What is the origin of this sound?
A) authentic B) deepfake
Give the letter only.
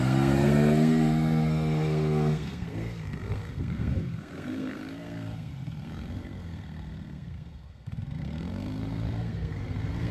B